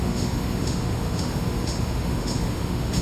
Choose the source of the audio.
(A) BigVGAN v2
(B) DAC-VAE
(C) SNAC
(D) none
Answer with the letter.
B